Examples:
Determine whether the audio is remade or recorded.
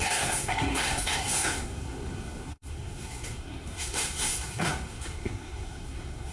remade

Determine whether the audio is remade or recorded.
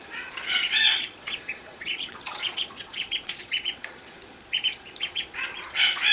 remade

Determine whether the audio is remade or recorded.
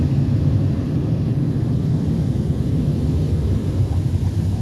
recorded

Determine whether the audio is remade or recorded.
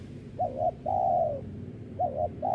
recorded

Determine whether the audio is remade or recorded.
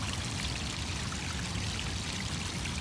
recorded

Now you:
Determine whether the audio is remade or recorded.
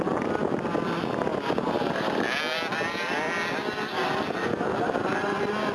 recorded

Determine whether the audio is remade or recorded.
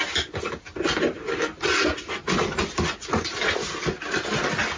recorded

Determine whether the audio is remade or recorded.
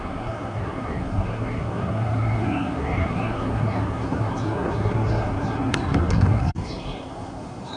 remade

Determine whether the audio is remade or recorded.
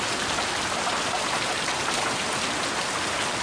recorded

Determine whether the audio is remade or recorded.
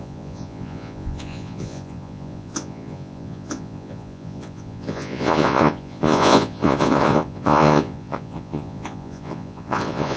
remade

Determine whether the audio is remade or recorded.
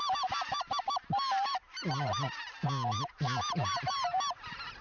recorded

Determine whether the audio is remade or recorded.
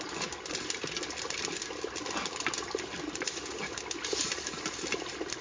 recorded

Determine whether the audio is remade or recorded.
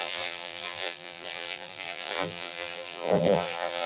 remade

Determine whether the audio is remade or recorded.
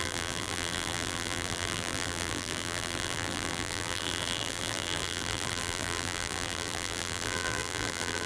remade